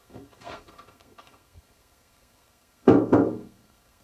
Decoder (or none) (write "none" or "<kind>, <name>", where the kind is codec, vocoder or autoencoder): codec, SNAC